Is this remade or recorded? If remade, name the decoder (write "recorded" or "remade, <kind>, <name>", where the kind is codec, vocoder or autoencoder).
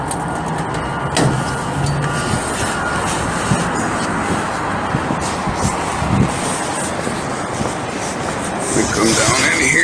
recorded